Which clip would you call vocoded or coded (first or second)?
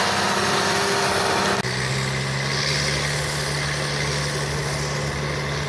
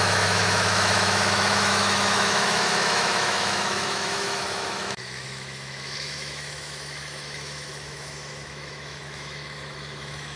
second